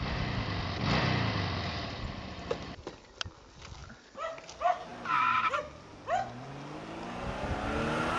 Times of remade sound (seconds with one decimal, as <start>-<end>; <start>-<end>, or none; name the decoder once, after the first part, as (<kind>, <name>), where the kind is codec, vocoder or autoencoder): none